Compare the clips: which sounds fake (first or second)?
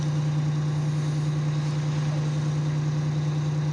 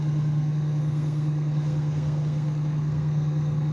second